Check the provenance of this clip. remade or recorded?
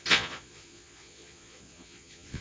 remade